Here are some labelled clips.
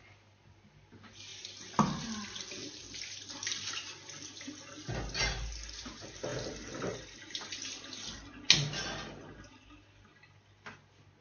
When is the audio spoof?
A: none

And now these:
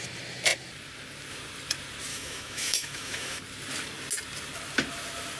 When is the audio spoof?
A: 2.1-3.4

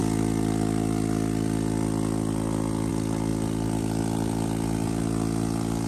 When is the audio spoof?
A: none

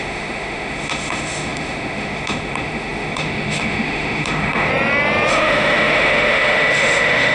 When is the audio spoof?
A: 0.0-4.7; 5.3-7.3

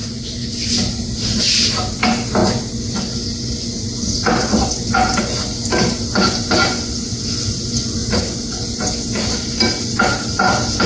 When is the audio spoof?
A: none

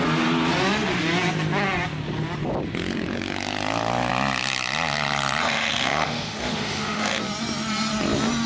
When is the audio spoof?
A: 5.4-7.2